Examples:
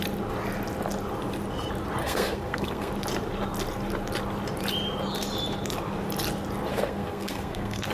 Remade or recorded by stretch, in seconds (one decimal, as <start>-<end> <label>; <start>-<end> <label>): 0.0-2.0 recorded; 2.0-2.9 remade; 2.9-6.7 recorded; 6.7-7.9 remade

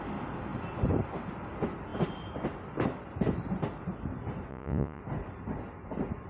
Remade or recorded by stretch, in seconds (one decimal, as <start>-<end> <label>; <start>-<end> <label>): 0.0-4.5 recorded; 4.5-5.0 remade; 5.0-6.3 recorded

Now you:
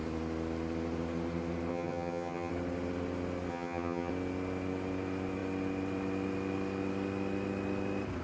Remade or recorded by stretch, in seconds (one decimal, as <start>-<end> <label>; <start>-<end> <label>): 0.0-1.7 recorded; 1.7-2.5 remade; 2.5-3.5 recorded; 3.5-4.1 remade; 4.1-8.2 recorded

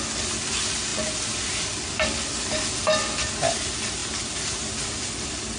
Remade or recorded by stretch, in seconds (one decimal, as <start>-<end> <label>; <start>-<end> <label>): 0.0-5.6 recorded

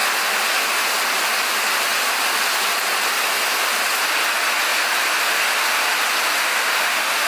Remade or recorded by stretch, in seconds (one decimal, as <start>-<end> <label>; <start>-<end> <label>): 0.0-6.4 recorded; 6.4-7.3 remade

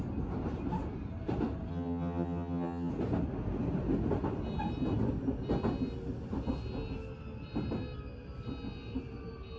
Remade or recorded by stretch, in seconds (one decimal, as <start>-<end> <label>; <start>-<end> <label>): 0.0-1.7 recorded; 1.7-2.9 remade; 2.9-9.6 recorded

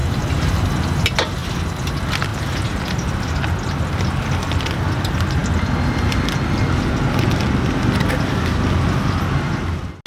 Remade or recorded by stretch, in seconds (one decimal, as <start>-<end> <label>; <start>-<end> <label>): 0.0-0.7 remade; 0.7-2.3 recorded; 2.3-3.4 remade; 3.4-10.1 recorded

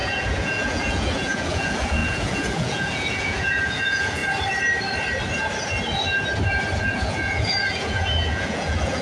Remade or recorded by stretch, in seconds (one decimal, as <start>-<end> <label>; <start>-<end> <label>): 0.0-4.2 remade; 4.2-6.8 recorded; 6.8-9.0 remade